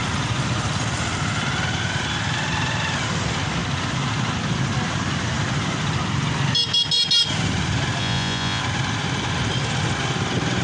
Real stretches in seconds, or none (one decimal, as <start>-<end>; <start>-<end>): 0.0-8.0; 8.6-10.6

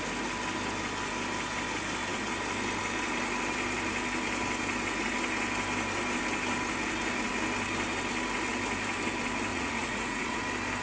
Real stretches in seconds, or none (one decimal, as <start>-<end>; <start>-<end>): 0.0-9.5; 10.4-10.8

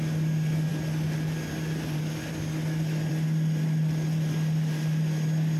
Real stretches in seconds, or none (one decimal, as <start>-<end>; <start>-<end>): 0.0-5.6